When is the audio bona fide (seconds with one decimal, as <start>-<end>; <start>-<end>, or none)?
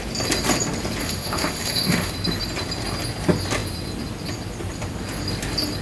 0.0-1.0; 2.1-5.8